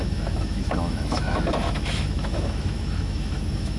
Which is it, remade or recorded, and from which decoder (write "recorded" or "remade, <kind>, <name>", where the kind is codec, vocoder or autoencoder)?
remade, autoencoder, DAC-VAE